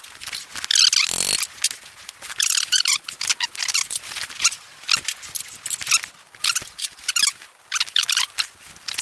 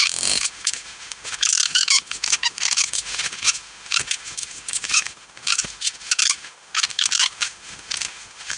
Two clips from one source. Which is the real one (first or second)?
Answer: first